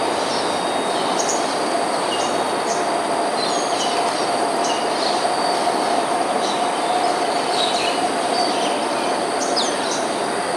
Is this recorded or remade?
recorded